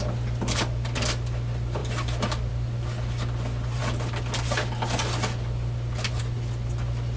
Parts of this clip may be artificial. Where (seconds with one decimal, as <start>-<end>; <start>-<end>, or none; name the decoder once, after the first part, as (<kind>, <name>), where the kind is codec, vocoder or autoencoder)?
none